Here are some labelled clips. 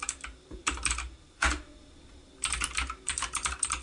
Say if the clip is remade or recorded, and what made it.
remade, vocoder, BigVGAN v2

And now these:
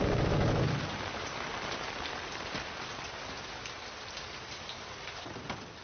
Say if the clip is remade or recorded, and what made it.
remade, vocoder, BigVGAN v2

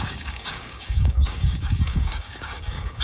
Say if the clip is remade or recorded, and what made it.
remade, codec, DAC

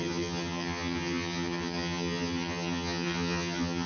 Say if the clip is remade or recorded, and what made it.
remade, vocoder, HiFi-GAN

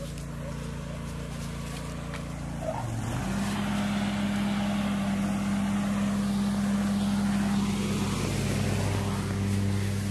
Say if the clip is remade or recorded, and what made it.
recorded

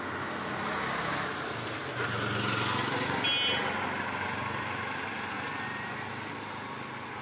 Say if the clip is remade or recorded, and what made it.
recorded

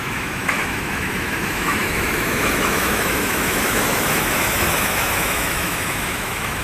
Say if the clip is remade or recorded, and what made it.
remade, autoencoder, DAC-VAE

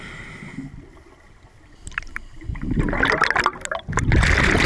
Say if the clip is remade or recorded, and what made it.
recorded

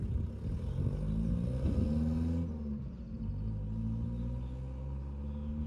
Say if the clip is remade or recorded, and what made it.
recorded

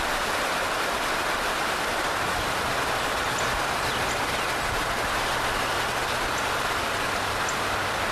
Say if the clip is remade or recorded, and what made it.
recorded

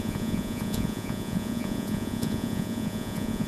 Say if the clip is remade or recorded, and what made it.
remade, vocoder, Vocos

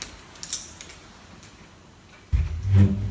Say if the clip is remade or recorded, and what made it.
recorded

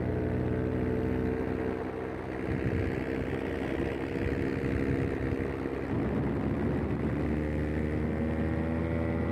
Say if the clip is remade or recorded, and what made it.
recorded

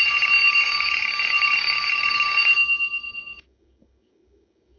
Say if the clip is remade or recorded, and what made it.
remade, codec, DAC